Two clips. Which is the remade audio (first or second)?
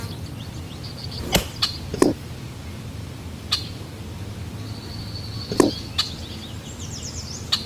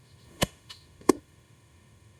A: second